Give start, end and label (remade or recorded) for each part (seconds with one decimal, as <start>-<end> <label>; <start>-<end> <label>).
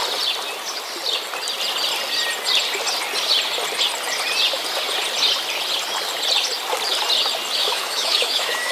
0.0-7.6 recorded; 7.6-8.7 remade